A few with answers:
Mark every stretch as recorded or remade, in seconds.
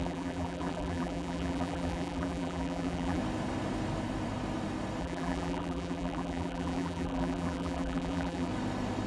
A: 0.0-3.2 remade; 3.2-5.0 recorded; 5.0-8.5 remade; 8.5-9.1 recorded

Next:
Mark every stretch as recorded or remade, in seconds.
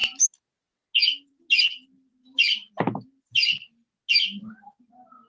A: 0.0-5.3 recorded